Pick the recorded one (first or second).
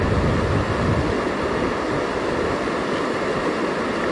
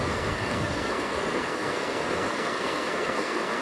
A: first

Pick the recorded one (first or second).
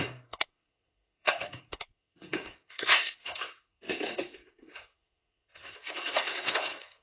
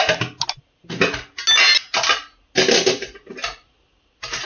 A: second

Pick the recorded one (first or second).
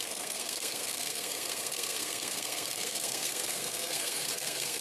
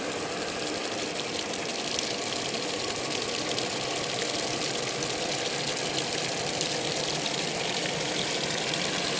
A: second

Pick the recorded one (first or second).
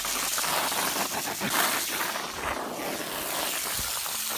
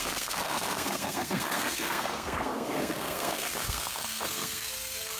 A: first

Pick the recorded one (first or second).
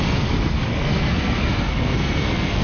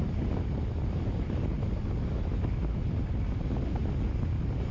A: second